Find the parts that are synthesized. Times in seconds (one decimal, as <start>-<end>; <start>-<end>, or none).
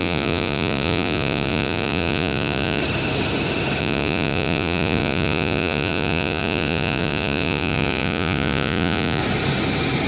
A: 0.0-2.8; 3.8-9.2